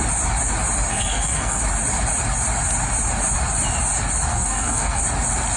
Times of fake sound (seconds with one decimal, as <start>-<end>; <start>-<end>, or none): 0.9-1.6; 4.3-5.0